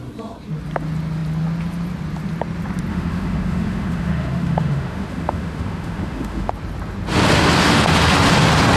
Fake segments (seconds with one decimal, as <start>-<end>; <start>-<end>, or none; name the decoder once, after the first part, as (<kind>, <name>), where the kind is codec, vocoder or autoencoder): 2.9-6.5 (autoencoder, DAC-VAE)